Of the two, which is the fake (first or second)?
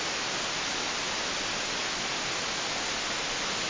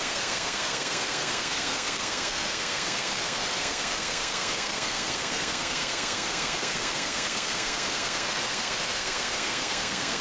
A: second